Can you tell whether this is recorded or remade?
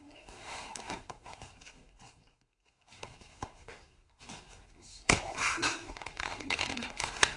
remade